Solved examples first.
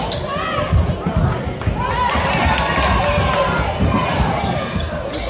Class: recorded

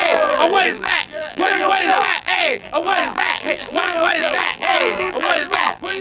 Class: remade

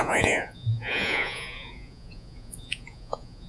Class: remade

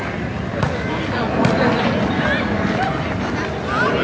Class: recorded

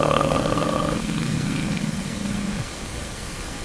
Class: remade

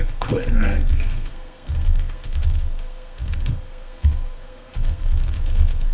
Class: remade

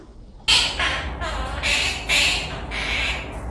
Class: recorded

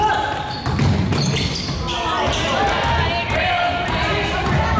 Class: recorded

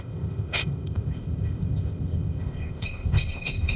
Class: remade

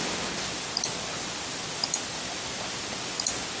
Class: recorded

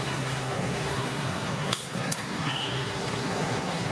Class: remade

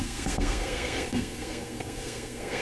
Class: remade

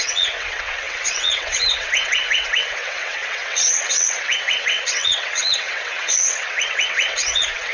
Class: remade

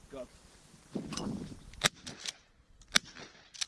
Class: recorded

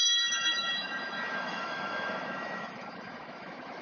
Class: remade